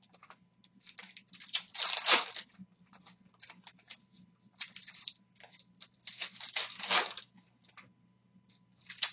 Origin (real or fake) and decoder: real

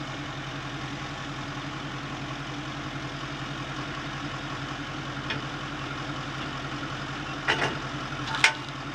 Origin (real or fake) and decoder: real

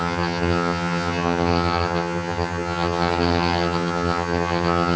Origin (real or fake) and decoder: fake, vocoder, HiFi-GAN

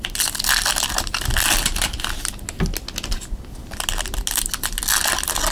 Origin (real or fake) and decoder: real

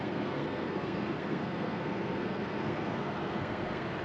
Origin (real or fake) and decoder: fake, codec, SNAC